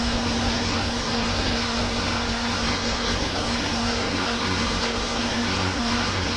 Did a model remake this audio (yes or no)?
yes